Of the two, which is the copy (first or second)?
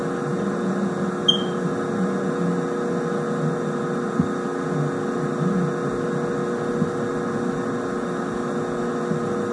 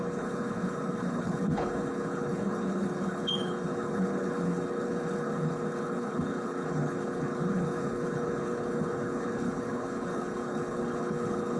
second